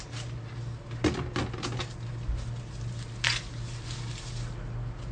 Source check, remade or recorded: recorded